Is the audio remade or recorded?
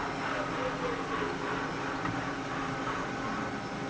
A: recorded